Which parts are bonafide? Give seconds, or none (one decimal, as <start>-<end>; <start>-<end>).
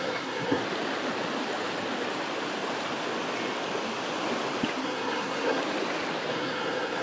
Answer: 0.6-4.8; 5.6-6.3